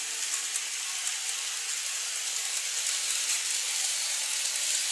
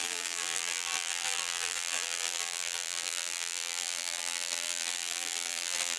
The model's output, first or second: second